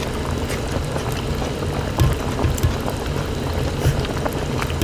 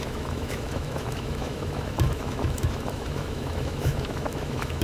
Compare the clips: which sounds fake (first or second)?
second